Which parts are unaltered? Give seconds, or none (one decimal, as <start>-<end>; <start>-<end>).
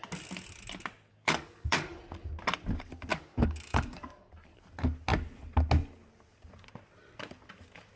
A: 0.0-1.1; 2.0-3.1; 4.3-8.0